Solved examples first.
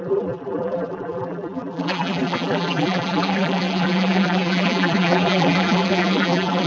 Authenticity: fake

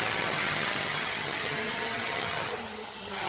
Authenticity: fake